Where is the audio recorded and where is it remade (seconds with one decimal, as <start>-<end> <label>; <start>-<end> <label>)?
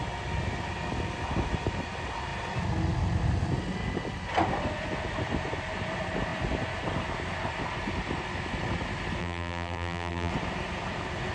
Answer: 0.0-9.2 recorded; 9.2-10.3 remade; 10.3-11.3 recorded